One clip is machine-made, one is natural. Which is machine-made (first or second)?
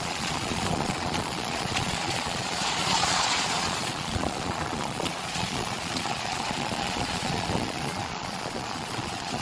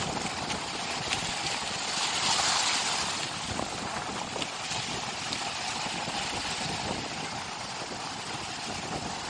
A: first